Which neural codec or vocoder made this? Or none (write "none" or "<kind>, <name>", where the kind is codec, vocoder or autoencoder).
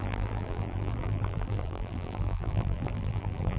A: vocoder, BigVGAN v2